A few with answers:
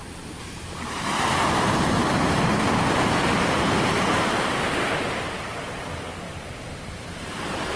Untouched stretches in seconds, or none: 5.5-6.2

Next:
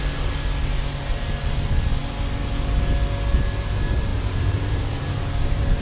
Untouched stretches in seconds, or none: 0.0-4.1

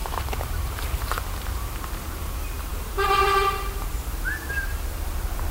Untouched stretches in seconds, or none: 1.2-2.7; 3.9-5.5

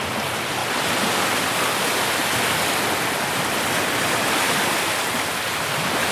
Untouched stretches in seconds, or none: none

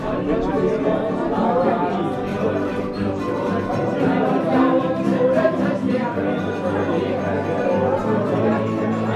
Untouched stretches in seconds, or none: 0.0-2.3; 5.8-9.2